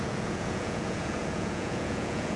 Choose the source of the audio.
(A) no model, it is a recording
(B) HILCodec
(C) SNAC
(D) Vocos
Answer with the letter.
D